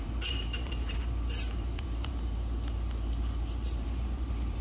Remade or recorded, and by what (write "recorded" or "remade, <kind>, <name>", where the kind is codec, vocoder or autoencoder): remade, vocoder, BigVGAN v2